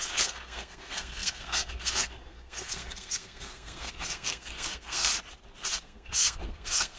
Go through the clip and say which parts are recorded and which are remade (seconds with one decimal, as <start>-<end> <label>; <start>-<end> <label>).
0.0-5.1 remade; 5.1-5.7 recorded; 5.7-7.0 remade